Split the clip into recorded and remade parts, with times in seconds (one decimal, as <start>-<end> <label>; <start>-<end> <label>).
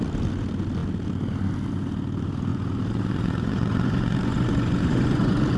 0.0-2.5 recorded; 2.5-5.6 remade